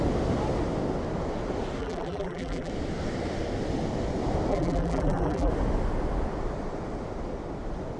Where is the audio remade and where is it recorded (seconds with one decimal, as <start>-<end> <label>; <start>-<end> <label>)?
0.0-1.8 recorded; 1.8-2.7 remade; 2.7-4.5 recorded; 4.5-5.5 remade; 5.5-8.0 recorded